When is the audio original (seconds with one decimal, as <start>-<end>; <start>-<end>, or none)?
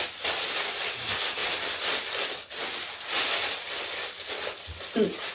0.0-5.3